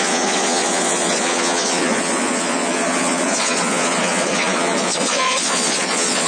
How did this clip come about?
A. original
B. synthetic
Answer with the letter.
B